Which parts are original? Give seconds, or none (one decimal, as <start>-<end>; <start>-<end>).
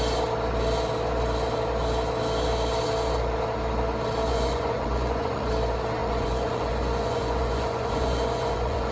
0.0-4.3; 5.5-6.0